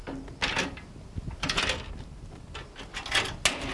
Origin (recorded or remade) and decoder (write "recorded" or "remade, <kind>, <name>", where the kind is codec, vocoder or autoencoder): recorded